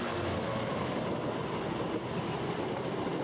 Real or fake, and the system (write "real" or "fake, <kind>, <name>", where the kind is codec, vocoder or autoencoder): real